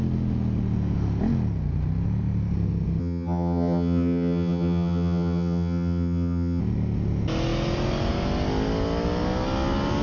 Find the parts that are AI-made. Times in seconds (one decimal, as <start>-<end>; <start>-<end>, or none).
3.0-6.6